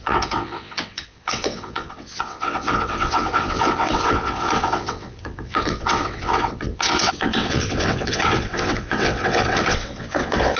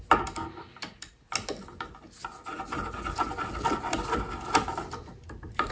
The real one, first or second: second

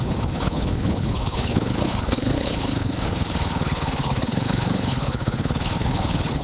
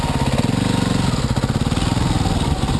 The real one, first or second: second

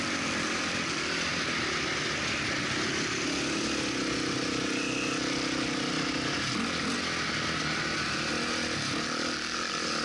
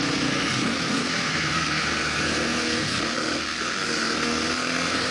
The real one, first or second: first